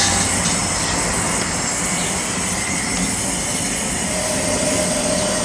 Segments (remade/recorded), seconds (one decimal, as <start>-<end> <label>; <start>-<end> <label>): 0.0-5.4 recorded